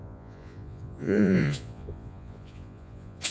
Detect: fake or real fake